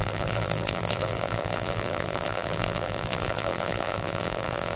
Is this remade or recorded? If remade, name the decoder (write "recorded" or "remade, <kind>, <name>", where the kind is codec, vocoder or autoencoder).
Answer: remade, vocoder, BigVGAN v2